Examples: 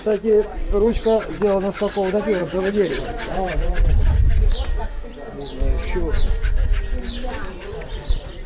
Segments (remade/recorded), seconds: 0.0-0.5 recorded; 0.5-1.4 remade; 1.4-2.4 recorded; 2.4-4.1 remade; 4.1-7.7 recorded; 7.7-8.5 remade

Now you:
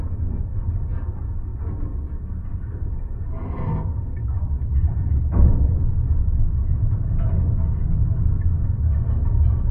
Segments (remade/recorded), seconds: 0.0-9.7 recorded

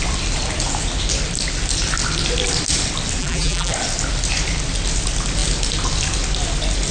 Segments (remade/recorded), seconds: 0.0-3.2 recorded; 3.2-3.7 remade; 3.7-6.9 recorded

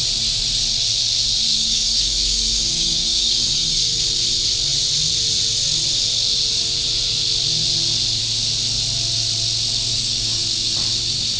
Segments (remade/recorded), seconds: 0.0-1.5 recorded; 1.5-4.0 remade; 4.0-9.9 recorded; 9.9-10.4 remade; 10.4-11.4 recorded

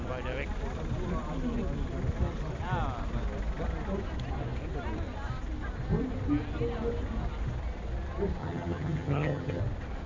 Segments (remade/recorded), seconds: 0.0-8.4 recorded; 8.4-9.6 remade; 9.6-10.1 recorded

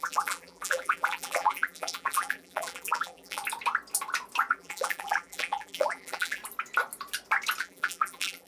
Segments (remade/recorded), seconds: 0.0-3.4 remade; 3.4-4.5 recorded; 4.5-6.4 remade; 6.4-7.6 recorded; 7.6-8.5 remade